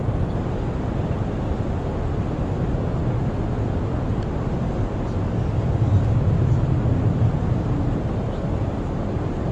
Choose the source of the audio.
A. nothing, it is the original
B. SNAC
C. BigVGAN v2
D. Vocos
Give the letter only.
A